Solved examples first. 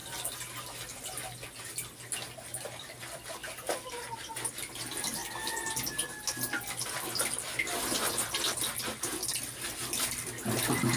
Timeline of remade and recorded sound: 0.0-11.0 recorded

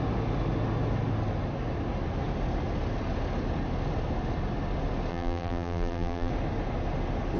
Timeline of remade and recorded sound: 0.0-5.1 recorded; 5.1-6.3 remade; 6.3-7.4 recorded

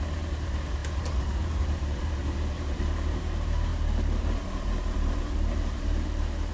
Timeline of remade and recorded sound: 0.0-6.5 remade

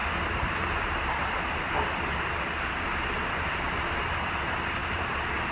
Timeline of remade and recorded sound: 0.0-5.5 recorded